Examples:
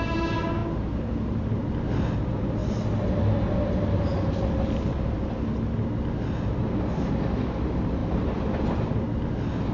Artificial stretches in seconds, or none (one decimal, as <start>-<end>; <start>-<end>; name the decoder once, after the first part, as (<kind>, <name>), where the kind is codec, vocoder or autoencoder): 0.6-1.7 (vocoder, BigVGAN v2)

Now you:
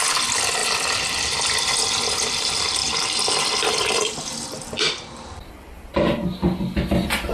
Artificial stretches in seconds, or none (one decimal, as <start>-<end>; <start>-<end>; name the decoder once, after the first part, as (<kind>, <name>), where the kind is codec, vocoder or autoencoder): 0.6-1.7 (vocoder, BigVGAN v2); 2.8-3.6; 4.6-6.0

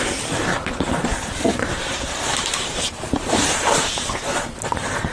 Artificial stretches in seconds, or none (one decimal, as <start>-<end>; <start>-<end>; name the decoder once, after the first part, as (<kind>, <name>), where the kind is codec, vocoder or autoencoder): 1.1-4.2 (vocoder, BigVGAN v2)

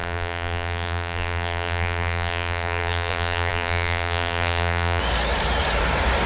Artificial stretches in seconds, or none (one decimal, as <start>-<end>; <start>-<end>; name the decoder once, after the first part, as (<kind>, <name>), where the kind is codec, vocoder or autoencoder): 0.0-5.0 (vocoder, BigVGAN v2)

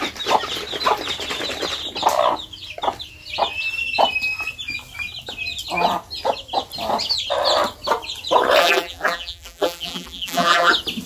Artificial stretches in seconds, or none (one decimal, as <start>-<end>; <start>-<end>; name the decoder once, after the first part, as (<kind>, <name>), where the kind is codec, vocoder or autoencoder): 8.6-10.7 (vocoder, BigVGAN v2)